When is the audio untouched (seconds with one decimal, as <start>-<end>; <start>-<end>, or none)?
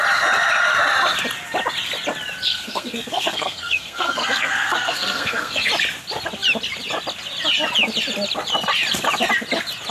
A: 0.0-2.5; 5.7-9.9